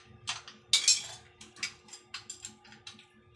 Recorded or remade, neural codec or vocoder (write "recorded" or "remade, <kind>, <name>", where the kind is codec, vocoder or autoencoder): recorded